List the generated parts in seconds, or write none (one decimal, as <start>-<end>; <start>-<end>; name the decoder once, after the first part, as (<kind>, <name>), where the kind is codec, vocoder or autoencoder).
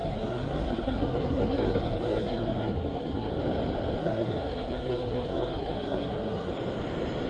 0.0-3.3 (codec, SNAC); 4.0-6.5